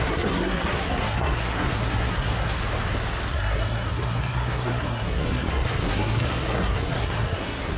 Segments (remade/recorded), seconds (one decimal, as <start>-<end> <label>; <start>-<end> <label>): 0.0-2.6 remade; 2.6-3.3 recorded; 3.3-7.8 remade

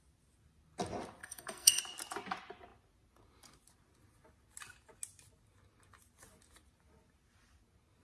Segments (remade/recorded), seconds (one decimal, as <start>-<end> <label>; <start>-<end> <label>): 0.0-1.2 recorded; 1.2-1.8 remade; 1.8-8.0 recorded

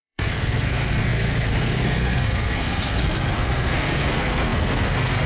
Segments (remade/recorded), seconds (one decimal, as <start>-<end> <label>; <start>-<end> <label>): 0.0-5.3 remade

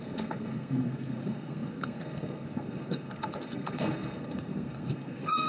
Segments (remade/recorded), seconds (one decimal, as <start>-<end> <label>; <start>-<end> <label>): 0.0-5.5 remade

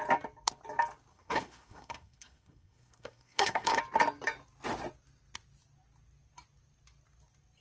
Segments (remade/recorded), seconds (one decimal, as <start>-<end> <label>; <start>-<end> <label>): 0.0-1.1 recorded; 1.1-3.8 remade; 3.8-7.6 recorded